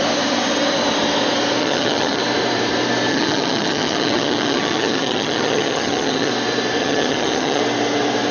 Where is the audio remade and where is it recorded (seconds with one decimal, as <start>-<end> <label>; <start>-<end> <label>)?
0.0-1.6 recorded; 1.6-2.2 remade; 2.2-3.1 recorded; 3.1-6.3 remade; 6.3-6.8 recorded; 6.8-7.6 remade; 7.6-8.3 recorded